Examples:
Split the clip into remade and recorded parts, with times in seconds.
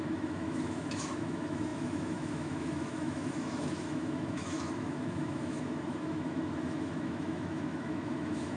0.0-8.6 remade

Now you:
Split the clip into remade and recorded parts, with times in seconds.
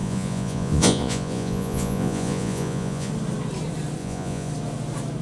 0.0-3.1 remade; 3.1-4.0 recorded; 4.0-4.5 remade; 4.5-5.2 recorded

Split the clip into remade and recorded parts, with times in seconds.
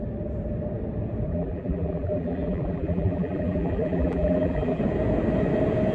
0.0-1.3 recorded; 1.3-4.8 remade; 4.8-5.9 recorded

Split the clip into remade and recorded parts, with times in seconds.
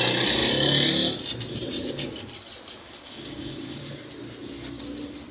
0.0-2.8 recorded; 2.8-3.8 remade; 3.8-5.3 recorded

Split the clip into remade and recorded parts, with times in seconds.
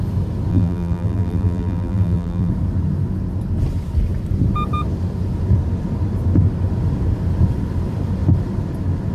0.0-0.5 recorded; 0.5-2.5 remade; 2.5-9.1 recorded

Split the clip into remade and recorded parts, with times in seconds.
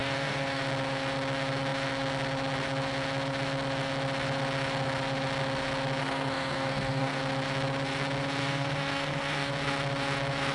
0.0-0.6 remade; 0.6-6.0 recorded; 6.0-7.2 remade; 7.2-8.4 recorded; 8.4-9.5 remade; 9.5-10.5 recorded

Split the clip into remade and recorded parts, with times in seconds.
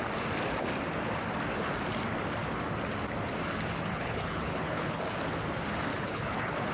0.0-3.9 recorded; 3.9-5.0 remade; 5.0-5.9 recorded; 5.9-6.7 remade